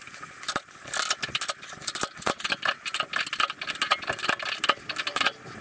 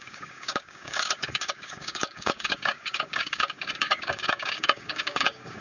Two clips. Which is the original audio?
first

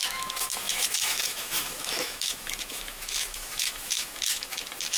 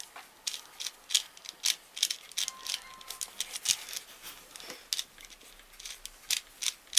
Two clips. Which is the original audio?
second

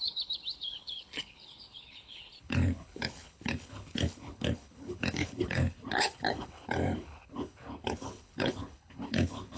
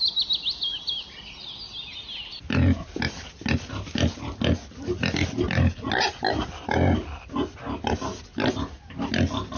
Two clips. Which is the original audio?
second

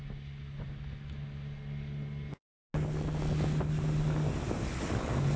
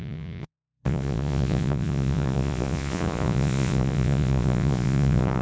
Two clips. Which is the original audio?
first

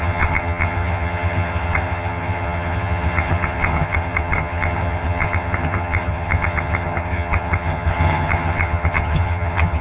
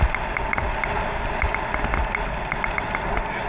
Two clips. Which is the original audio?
second